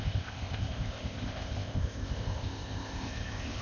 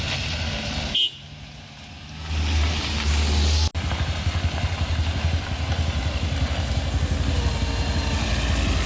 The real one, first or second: second